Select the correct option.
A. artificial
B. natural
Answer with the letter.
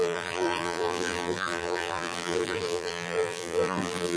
A